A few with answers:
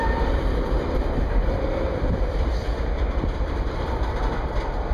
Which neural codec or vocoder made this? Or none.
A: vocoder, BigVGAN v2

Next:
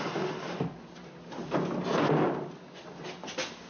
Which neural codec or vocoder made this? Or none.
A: none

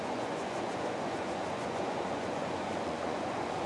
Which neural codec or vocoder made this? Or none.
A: vocoder, Vocos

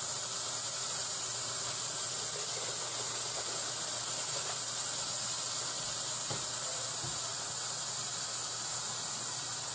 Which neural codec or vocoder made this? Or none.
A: none